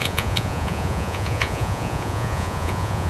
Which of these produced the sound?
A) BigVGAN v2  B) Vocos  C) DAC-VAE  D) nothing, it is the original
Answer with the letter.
B